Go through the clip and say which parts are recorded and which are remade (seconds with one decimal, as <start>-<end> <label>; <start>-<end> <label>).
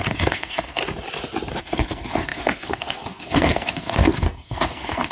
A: 0.0-0.8 remade; 0.8-1.6 recorded; 1.6-5.1 remade